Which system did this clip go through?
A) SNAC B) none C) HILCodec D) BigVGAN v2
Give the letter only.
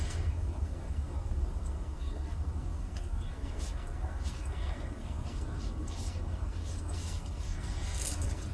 A